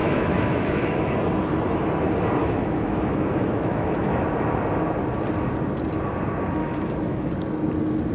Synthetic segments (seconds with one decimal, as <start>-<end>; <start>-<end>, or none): 0.0-1.1; 2.4-4.2; 6.6-7.3